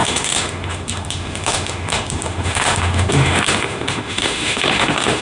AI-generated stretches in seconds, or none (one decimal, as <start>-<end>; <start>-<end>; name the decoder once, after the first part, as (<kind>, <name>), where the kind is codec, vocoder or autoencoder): 0.0-5.2 (autoencoder, DAC-VAE)